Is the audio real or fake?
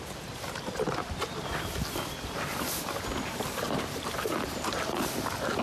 real